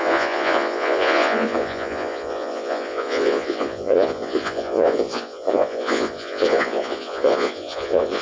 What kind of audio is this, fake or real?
fake